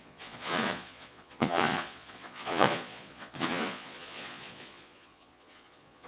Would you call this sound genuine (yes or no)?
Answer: no